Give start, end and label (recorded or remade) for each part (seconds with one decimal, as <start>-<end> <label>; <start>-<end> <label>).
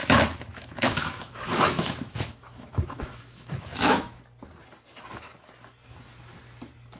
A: 0.0-4.2 remade; 4.2-7.0 recorded